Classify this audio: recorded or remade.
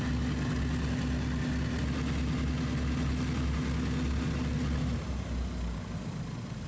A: recorded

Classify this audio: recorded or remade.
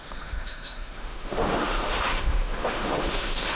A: remade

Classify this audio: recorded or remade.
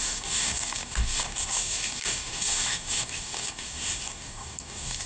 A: remade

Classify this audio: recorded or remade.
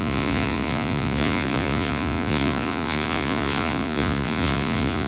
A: remade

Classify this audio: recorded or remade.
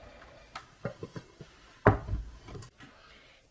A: recorded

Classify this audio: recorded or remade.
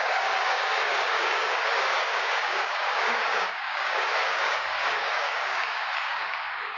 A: remade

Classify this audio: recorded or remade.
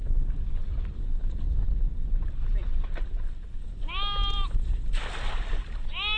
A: recorded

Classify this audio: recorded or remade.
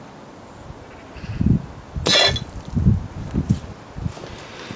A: recorded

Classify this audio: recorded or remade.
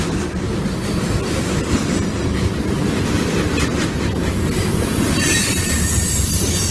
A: recorded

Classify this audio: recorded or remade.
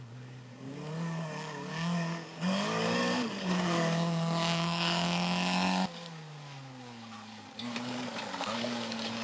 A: remade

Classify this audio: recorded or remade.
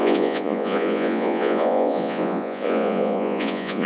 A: remade